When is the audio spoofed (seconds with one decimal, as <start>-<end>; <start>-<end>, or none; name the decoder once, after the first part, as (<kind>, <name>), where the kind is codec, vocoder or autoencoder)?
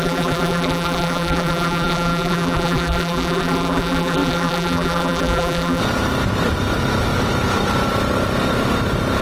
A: 0.0-5.8 (vocoder, BigVGAN v2)